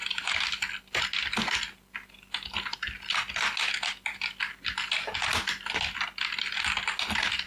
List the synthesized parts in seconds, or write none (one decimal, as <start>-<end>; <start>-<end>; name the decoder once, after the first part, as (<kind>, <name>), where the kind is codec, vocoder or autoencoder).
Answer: none